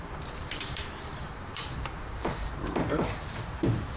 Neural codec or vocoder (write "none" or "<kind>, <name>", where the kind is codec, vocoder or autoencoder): vocoder, BigVGAN v2